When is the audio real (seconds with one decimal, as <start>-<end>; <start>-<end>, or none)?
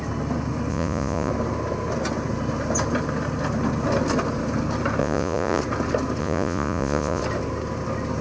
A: 0.0-0.7; 1.3-5.0; 5.6-6.2; 7.2-8.2